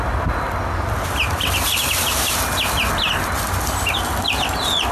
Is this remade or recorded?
recorded